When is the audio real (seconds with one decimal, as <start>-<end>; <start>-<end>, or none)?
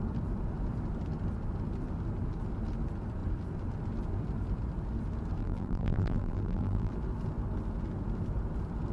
0.0-5.4; 6.9-8.9